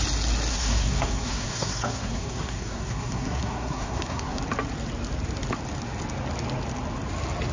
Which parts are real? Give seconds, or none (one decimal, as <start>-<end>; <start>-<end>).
0.0-0.5; 4.4-7.5